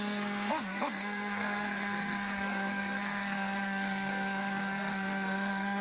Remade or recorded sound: remade